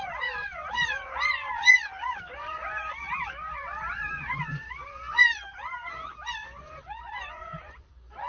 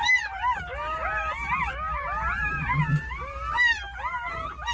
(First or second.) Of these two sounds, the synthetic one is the first